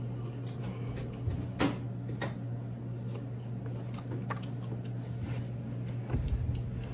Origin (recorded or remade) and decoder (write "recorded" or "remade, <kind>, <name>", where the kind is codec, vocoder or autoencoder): recorded